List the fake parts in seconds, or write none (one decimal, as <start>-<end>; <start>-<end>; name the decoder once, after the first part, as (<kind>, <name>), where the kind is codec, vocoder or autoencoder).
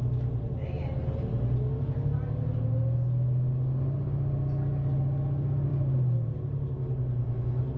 none